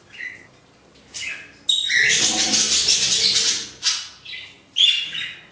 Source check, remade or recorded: recorded